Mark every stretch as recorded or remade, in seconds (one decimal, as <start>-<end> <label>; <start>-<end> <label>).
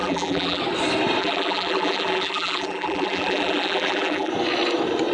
0.0-0.6 remade; 0.6-1.2 recorded; 1.2-4.3 remade; 4.3-5.1 recorded